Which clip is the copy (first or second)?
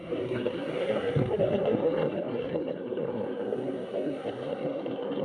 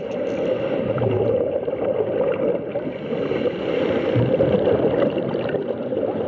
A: first